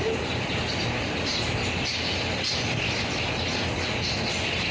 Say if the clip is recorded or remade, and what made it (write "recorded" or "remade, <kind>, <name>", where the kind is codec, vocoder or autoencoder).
recorded